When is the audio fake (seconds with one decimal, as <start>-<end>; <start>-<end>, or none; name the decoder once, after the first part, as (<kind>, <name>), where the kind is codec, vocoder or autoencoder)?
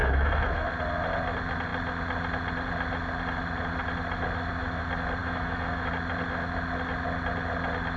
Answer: 0.0-0.7 (autoencoder, DAC-VAE); 5.2-5.9